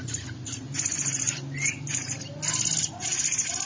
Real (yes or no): yes